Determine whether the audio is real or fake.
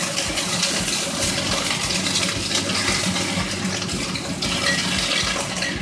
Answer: real